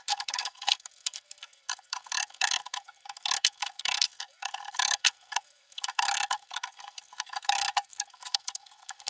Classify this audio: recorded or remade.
remade